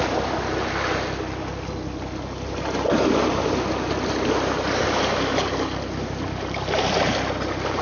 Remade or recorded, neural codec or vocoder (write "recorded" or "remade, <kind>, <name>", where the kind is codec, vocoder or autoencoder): recorded